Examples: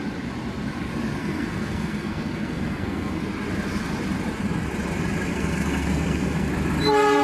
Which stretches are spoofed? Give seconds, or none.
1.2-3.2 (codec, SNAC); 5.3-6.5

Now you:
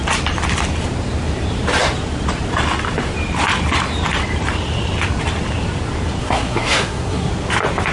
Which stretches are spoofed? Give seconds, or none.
6.2-7.3 (codec, SNAC)

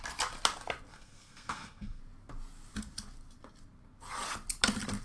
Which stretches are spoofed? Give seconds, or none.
0.9-2.0 (codec, SNAC)

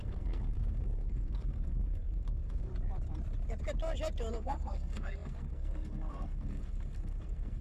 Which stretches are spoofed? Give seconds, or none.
0.0-2.7 (codec, SNAC); 4.3-7.6